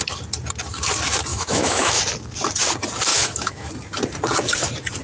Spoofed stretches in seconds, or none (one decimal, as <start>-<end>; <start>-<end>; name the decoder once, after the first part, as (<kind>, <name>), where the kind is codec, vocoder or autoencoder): 1.3-2.0 (autoencoder, DAC-VAE); 3.1-3.7